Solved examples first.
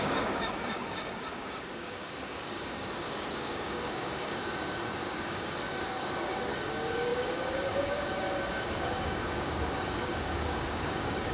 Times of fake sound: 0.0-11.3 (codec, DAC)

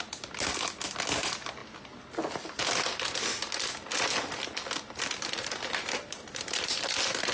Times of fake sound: none

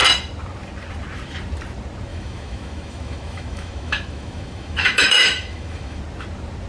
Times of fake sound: 2.1-6.0 (autoencoder, DAC-VAE)

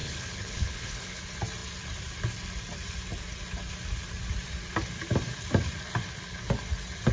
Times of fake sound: 0.0-1.2 (codec, HILCodec)

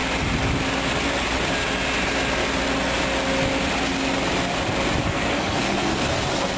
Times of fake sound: 5.0-6.1 (codec, SNAC)